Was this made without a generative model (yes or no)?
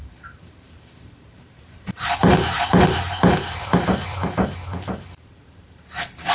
no